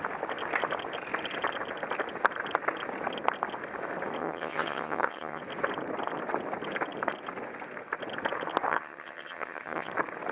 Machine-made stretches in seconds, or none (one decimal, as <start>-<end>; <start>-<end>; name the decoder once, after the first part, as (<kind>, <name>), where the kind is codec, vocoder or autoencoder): 4.2-5.4 (vocoder, HiFi-GAN); 8.7-9.9